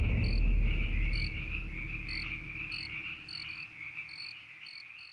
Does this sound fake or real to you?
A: real